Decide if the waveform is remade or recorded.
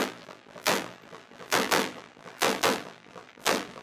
remade